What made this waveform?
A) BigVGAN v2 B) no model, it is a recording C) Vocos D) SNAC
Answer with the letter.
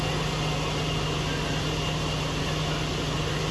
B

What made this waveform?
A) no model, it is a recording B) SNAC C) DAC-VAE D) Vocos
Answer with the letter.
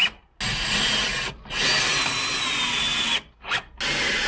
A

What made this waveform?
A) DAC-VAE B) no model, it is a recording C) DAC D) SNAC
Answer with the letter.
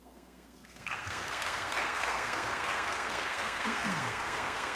D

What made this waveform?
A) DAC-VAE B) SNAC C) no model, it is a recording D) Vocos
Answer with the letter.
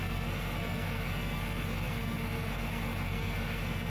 B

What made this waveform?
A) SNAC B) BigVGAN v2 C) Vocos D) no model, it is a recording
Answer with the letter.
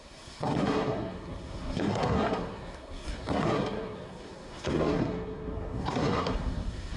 A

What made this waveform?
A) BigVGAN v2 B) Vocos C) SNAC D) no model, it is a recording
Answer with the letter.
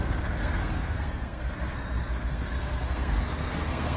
C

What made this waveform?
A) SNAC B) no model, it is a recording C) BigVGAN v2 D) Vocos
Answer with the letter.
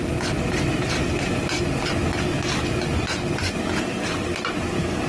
B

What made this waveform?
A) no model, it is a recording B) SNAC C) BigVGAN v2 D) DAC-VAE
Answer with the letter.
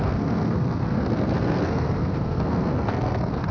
B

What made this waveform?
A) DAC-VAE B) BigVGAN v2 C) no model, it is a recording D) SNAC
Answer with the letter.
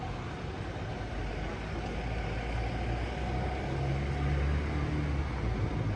C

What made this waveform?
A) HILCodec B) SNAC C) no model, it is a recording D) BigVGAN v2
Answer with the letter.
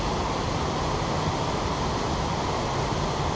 C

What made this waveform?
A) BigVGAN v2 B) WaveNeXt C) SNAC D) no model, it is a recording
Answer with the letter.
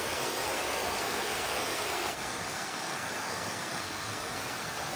C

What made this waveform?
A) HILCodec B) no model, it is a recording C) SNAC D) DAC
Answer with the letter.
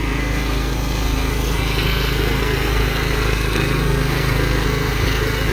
C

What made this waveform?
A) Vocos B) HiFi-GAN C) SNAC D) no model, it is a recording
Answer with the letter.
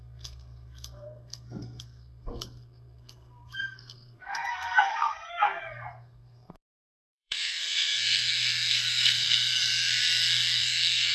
C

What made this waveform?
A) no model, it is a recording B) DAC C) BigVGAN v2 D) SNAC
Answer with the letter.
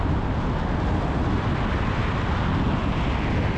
A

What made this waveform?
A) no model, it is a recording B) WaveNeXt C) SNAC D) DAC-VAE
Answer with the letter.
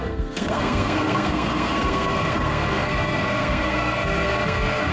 C